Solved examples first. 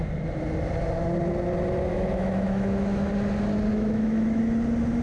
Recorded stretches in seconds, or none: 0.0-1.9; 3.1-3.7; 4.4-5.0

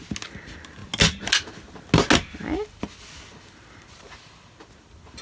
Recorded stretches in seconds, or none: 0.0-5.2

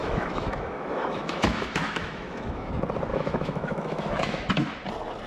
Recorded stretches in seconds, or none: 2.7-3.1; 4.5-5.3

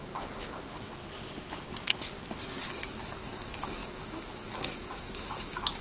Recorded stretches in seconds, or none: 1.0-2.5

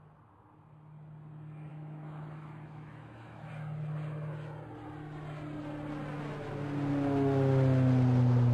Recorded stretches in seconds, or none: 0.0-1.7; 3.5-8.5

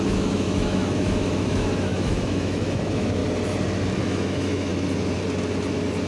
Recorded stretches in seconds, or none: 3.2-4.0; 4.7-6.1

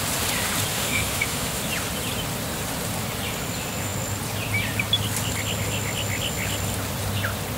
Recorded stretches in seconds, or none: 0.0-0.7; 1.6-7.6